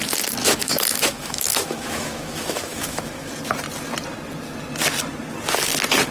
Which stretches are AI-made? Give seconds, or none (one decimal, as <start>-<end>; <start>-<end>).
0.4-3.3